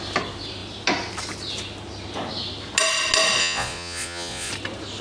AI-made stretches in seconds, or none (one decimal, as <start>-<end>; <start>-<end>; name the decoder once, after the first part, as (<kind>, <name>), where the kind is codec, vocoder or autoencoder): 3.4-4.5 (vocoder, Vocos)